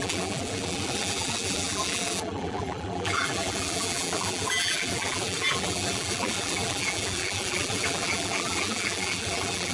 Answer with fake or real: fake